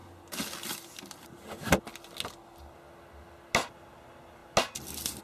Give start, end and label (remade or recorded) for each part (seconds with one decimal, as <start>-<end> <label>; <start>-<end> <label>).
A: 0.0-5.2 recorded